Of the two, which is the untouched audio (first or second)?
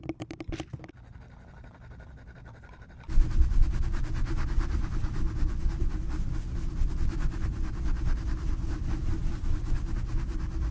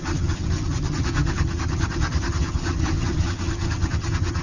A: first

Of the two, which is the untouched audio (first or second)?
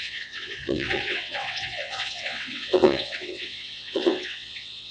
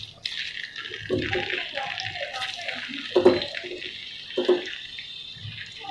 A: second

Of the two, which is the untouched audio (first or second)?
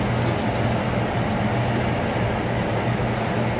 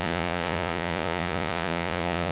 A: first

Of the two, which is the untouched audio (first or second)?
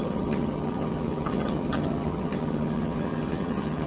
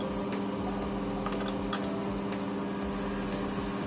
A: second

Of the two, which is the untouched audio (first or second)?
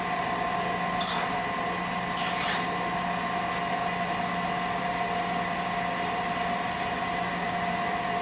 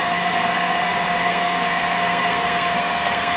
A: first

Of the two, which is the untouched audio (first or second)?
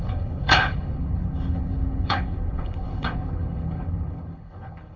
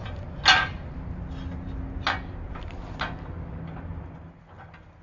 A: second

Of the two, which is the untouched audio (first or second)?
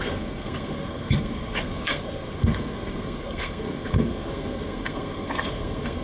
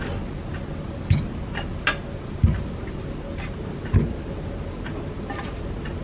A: second